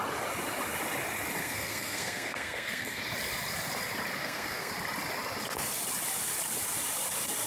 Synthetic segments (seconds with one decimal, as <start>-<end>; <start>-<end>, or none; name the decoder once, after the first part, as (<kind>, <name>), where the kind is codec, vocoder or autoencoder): 1.4-3.0 (codec, SNAC); 4.2-4.7